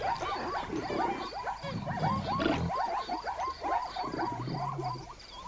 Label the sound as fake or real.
real